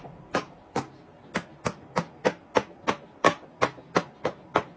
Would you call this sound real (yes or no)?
yes